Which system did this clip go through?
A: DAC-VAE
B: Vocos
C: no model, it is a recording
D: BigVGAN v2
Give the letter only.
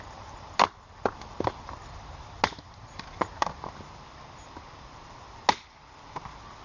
C